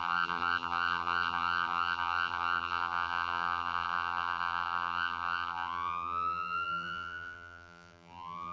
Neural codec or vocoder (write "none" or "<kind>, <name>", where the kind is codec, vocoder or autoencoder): vocoder, BigVGAN v2